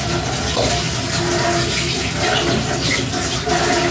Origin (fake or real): real